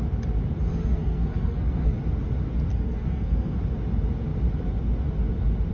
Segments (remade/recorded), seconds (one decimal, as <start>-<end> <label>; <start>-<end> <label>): 0.0-0.7 recorded; 0.7-2.0 remade; 2.0-2.7 recorded; 2.7-3.6 remade; 3.6-5.7 recorded